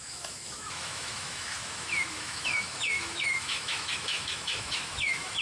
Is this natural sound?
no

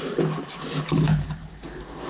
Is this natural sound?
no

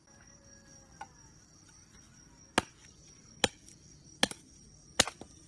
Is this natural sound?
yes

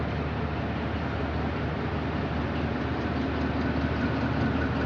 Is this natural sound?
yes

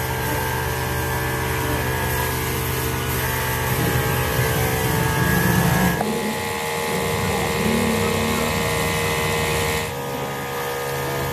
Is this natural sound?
yes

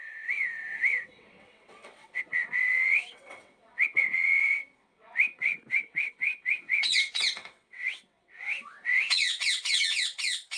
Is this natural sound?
no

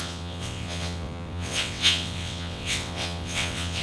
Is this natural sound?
no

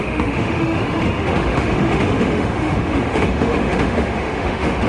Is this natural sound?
no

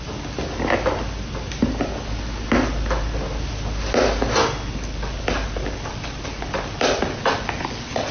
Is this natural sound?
yes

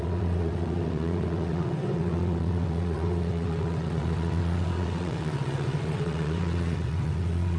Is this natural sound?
no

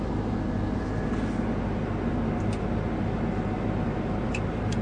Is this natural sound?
yes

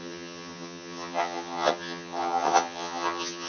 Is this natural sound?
no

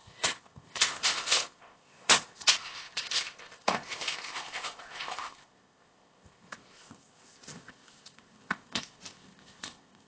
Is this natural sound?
no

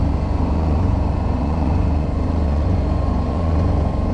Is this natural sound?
no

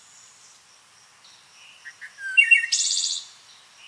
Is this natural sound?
yes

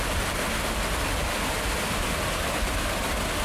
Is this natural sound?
yes